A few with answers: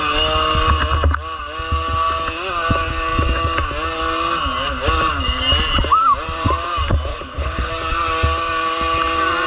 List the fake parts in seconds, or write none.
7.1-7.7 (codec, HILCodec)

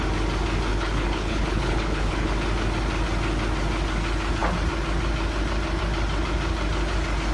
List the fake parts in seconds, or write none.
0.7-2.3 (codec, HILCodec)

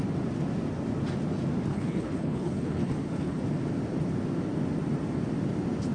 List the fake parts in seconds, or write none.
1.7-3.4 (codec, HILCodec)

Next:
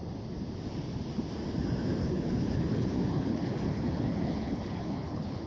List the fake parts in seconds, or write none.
2.0-5.5 (codec, HILCodec)